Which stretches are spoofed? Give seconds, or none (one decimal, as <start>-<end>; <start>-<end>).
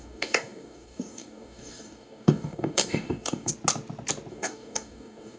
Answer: 0.0-3.5; 4.3-5.4